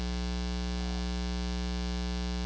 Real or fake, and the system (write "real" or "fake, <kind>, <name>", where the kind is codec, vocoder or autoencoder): real